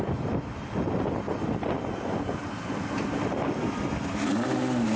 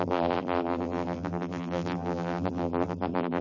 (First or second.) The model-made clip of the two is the second